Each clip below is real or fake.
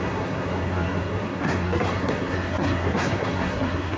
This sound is fake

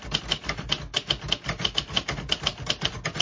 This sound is real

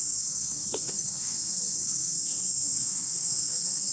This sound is fake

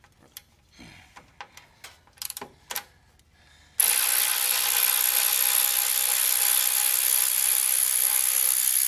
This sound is real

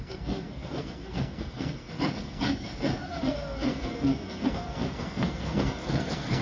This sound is fake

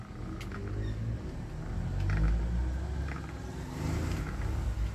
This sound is real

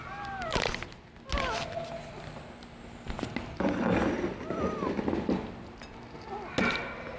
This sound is real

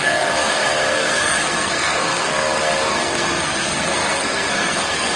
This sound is fake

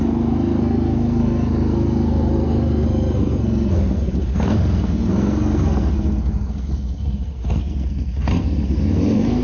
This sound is fake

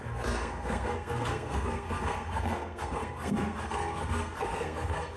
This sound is fake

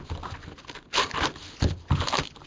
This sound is real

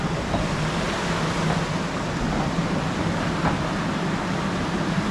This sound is real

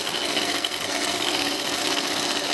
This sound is fake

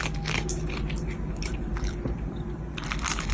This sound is real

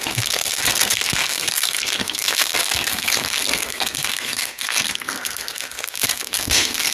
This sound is fake